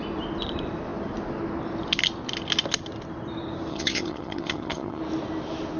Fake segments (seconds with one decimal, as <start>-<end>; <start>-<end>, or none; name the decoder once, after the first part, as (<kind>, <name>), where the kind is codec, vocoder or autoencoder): 3.7-5.0 (vocoder, HiFi-GAN)